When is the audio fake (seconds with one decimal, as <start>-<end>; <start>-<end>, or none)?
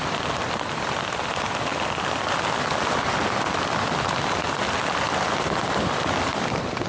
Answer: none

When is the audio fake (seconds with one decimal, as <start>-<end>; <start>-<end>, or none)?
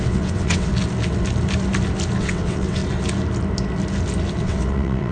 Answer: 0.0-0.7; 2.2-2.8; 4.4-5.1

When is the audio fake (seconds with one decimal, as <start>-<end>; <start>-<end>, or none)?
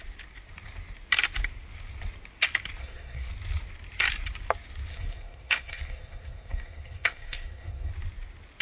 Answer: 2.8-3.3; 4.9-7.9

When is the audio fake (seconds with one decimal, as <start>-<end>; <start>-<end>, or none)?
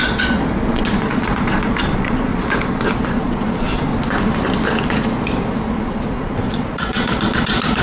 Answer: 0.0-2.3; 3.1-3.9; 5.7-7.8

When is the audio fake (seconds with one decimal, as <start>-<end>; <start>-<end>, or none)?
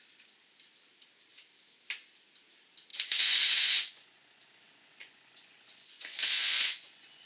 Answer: 2.9-7.3